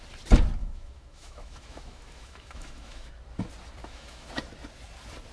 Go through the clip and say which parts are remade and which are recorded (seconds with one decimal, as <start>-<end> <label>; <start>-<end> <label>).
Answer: 0.0-0.6 recorded; 0.6-3.1 remade; 3.1-3.8 recorded; 3.8-4.3 remade; 4.3-5.3 recorded